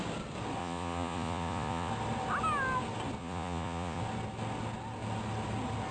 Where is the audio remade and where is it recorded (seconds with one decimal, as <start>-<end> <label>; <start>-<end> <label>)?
0.0-0.6 recorded; 0.6-1.9 remade; 1.9-3.2 recorded; 3.2-4.0 remade; 4.0-5.9 recorded